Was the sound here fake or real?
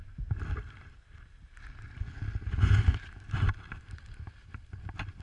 real